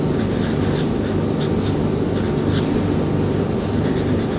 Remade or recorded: recorded